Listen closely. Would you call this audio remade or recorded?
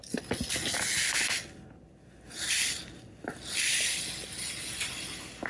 recorded